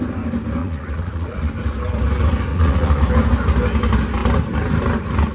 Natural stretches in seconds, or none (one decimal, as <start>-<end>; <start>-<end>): 0.0-0.6; 1.5-2.5; 3.0-5.3